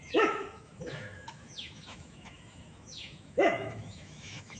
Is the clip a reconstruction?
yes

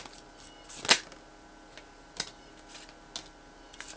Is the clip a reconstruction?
no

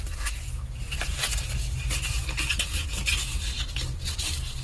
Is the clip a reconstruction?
no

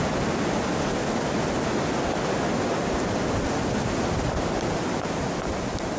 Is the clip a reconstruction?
no